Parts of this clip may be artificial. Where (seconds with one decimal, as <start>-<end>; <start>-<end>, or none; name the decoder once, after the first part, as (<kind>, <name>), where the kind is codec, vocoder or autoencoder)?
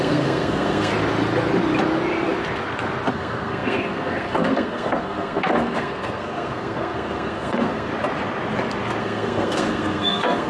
0.0-0.9 (codec, SNAC); 3.1-7.9; 9.0-10.5